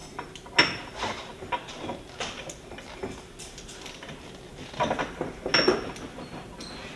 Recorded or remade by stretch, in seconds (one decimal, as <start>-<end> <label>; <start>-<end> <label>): 0.0-7.0 recorded